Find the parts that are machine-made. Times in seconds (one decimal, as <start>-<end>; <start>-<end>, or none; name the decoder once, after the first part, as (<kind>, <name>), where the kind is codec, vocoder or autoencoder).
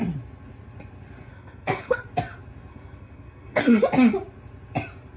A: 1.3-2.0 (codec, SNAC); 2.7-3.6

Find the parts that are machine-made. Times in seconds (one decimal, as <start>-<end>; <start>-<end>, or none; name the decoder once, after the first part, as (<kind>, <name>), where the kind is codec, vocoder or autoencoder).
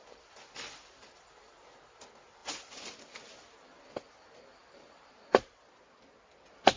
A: 0.0-1.6 (vocoder, BigVGAN v2); 2.4-3.3; 4.6-6.8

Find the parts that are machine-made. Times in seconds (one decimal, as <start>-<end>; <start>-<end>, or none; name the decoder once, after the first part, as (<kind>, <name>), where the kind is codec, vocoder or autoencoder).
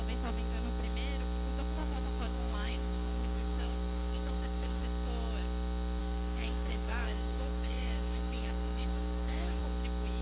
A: 1.8-4.8 (codec, DAC); 6.0-9.6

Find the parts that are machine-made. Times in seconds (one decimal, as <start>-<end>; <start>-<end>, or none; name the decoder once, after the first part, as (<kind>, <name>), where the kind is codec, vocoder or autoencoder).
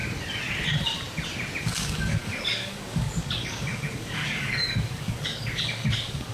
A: 1.6-6.3 (codec, DAC)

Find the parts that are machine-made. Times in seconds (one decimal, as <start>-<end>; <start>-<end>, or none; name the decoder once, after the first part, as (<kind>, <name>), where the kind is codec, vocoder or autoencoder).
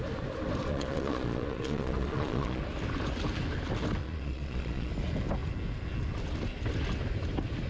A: 0.7-2.6 (vocoder, Vocos); 4.0-4.9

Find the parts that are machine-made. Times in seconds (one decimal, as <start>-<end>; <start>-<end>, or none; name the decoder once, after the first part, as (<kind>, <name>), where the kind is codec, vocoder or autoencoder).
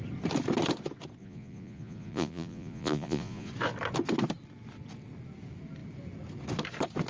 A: 1.2-3.5 (vocoder, Vocos)